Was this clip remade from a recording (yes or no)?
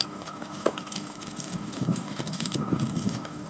yes